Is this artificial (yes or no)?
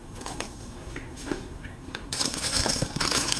yes